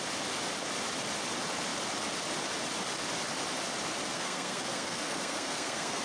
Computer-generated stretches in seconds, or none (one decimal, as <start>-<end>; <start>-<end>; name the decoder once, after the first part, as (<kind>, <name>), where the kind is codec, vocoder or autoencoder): 4.1-6.0 (codec, SNAC)